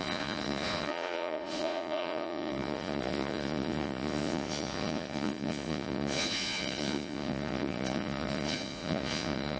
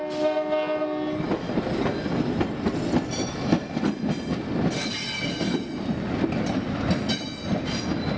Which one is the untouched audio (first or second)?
second